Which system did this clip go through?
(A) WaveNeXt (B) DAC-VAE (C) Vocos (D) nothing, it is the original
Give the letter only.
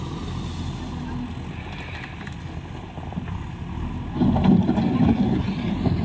D